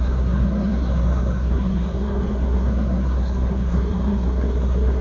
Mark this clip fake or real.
fake